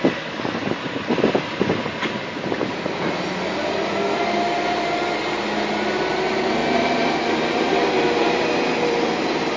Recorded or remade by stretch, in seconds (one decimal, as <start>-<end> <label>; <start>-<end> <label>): 0.0-0.6 recorded; 0.6-1.8 remade; 1.8-6.6 recorded; 6.6-9.6 remade